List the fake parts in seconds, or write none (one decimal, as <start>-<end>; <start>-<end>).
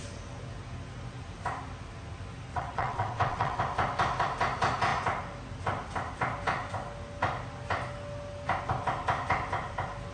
2.5-3.6